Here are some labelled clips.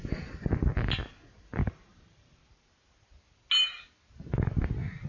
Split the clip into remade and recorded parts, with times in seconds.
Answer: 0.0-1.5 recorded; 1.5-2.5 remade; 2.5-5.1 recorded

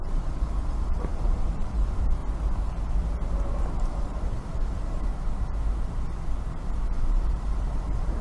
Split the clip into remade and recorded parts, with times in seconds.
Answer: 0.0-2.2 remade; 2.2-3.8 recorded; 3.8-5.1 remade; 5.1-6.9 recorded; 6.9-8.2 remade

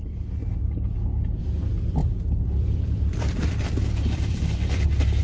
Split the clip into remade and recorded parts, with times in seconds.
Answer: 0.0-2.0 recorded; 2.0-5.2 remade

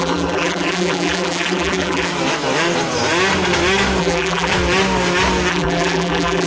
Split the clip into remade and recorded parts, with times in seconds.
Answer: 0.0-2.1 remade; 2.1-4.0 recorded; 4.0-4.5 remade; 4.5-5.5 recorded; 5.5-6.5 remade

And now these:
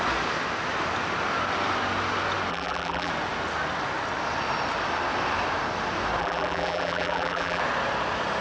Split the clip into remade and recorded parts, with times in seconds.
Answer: 0.0-2.5 recorded; 2.5-3.1 remade; 3.1-6.2 recorded; 6.2-7.6 remade; 7.6-8.4 recorded

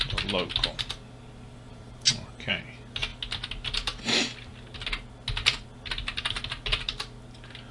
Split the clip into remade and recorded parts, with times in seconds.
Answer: 0.0-1.7 recorded; 1.7-2.5 remade; 2.5-7.7 recorded